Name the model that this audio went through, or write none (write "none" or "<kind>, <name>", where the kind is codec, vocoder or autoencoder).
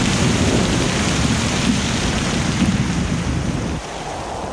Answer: none